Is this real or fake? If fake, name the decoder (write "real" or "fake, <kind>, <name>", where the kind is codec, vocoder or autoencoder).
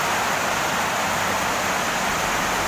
real